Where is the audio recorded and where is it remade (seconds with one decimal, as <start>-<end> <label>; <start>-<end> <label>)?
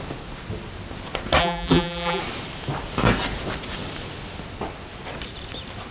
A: 0.0-1.4 recorded; 1.4-2.2 remade; 2.2-5.9 recorded